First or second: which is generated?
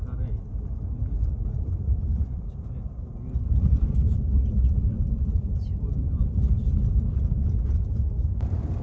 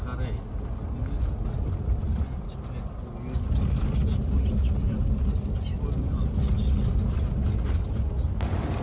first